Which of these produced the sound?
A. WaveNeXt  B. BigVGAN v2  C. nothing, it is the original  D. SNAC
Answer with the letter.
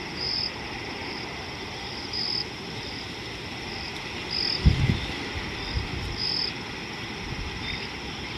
C